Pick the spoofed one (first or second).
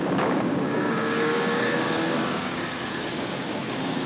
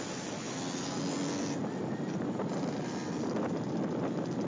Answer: first